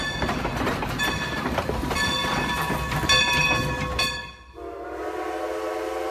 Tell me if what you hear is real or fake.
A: real